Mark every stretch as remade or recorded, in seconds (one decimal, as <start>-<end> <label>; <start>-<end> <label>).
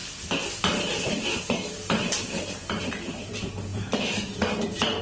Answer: 0.0-0.6 recorded; 0.6-5.0 remade